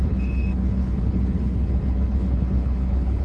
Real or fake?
fake